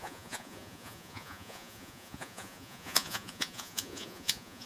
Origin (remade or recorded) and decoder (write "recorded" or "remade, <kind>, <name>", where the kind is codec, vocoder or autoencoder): remade, vocoder, Vocos